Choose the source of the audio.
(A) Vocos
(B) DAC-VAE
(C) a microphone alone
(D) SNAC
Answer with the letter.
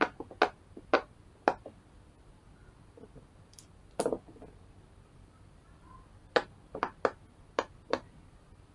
C